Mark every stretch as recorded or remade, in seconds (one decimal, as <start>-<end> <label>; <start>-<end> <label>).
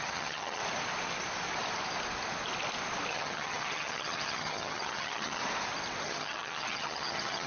0.0-0.6 remade; 0.6-3.1 recorded; 3.1-5.4 remade; 5.4-6.0 recorded; 6.0-7.5 remade